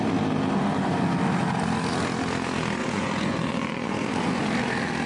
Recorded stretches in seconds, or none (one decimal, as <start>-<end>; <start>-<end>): 0.0-2.8; 4.4-5.1